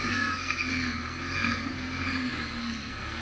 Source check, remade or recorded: remade